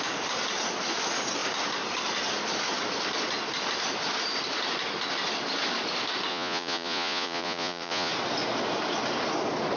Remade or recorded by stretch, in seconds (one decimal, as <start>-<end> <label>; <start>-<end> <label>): 0.0-6.3 recorded; 6.3-8.1 remade; 8.1-9.8 recorded